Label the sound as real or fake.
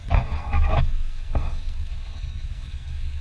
fake